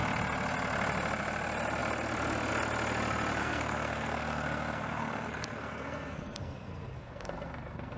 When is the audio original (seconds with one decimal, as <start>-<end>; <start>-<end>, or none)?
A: 0.0-3.4